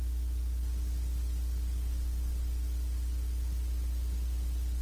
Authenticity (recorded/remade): recorded